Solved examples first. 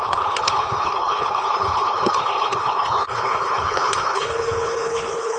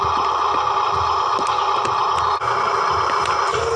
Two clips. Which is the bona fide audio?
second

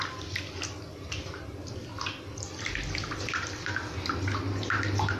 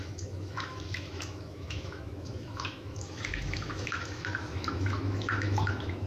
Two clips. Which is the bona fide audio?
first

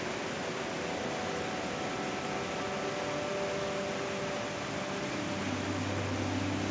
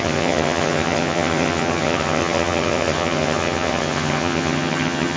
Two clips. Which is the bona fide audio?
first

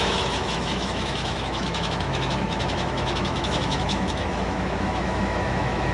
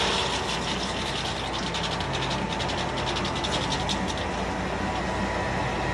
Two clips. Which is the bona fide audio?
second